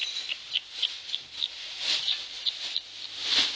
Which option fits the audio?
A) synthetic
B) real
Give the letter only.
B